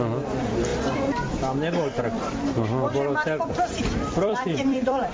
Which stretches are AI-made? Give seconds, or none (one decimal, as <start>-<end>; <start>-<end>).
0.0-0.7; 3.8-5.1